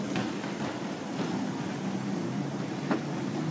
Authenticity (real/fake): real